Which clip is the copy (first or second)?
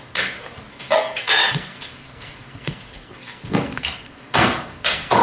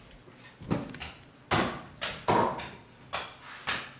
first